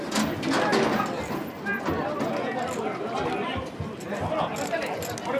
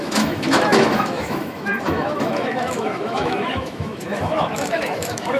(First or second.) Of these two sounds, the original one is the first